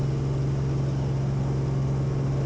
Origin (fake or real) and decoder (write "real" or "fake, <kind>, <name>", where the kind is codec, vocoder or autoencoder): real